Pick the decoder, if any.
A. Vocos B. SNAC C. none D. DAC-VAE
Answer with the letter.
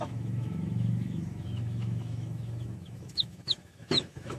D